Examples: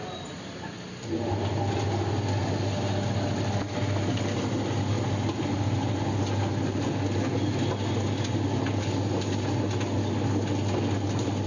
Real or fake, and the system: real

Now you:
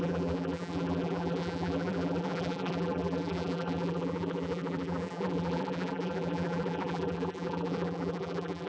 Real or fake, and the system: fake, vocoder, BigVGAN v2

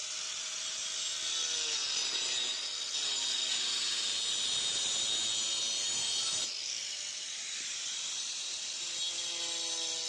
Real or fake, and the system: real